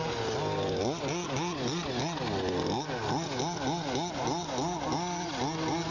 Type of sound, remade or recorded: recorded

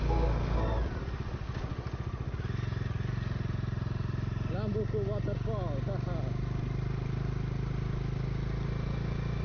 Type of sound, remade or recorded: recorded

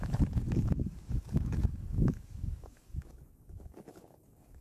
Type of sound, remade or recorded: remade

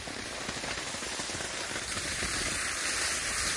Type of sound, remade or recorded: recorded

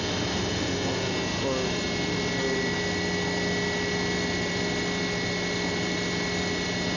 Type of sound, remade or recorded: recorded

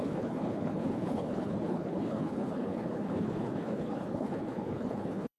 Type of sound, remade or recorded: remade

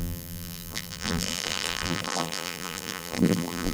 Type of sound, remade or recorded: remade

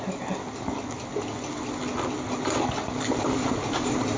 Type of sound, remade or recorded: recorded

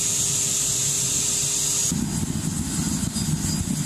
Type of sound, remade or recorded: recorded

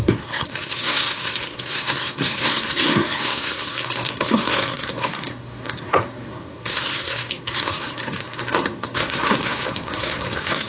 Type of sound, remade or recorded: remade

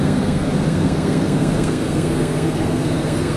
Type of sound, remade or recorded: remade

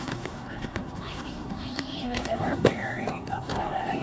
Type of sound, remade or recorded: remade